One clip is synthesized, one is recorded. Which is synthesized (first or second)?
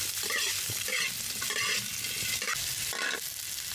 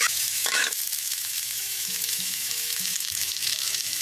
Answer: second